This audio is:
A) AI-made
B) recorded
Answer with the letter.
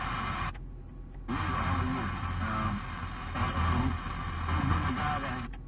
B